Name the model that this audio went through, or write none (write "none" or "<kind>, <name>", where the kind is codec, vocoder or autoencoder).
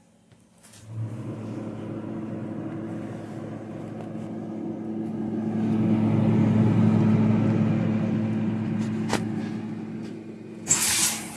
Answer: none